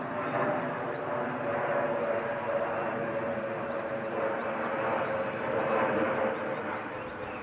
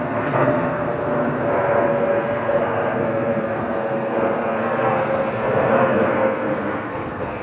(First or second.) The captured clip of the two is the first